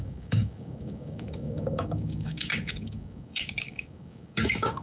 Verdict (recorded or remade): remade